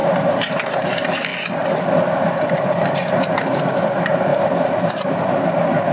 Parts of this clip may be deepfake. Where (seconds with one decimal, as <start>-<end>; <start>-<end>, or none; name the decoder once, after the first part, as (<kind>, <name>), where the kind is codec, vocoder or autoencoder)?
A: 0.0-0.8 (vocoder, BigVGAN v2); 4.3-5.1